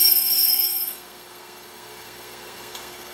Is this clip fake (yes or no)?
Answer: yes